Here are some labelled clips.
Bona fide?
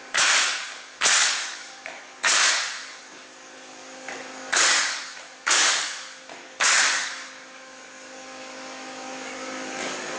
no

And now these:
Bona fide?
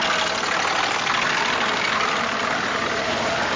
yes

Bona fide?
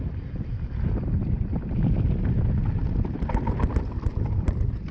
yes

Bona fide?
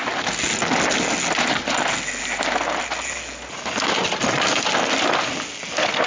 yes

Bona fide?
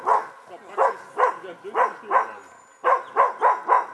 yes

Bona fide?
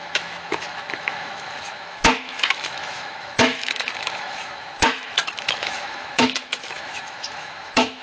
no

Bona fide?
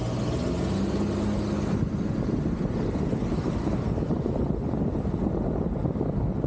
yes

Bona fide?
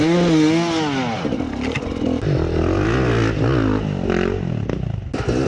yes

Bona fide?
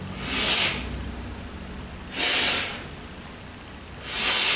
yes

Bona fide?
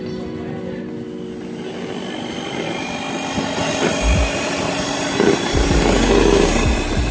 yes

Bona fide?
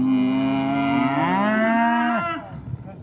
yes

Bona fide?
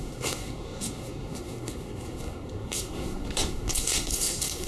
no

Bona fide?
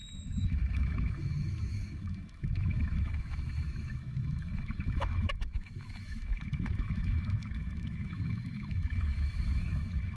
no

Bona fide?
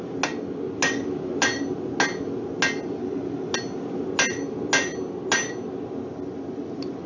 yes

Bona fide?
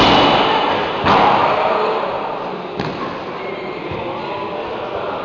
yes